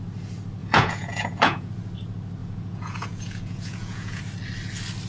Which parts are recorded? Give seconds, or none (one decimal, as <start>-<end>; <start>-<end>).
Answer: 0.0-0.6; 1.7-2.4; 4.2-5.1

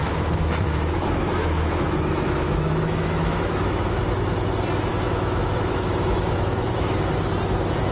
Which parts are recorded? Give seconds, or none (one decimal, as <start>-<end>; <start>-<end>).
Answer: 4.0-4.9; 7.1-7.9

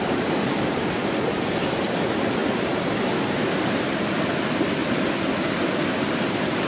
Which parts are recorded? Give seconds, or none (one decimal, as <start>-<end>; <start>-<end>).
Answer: 0.0-6.7